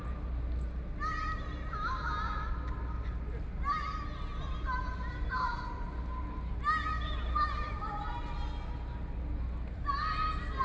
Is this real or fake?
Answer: real